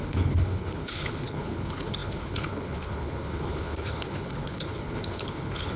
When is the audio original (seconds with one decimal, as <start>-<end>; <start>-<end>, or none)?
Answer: none